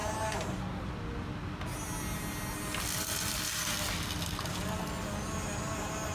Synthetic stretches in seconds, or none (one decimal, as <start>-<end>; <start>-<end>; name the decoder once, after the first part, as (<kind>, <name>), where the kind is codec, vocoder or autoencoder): none